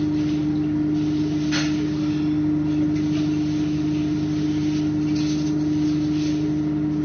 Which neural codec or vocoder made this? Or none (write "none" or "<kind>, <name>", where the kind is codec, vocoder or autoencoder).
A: none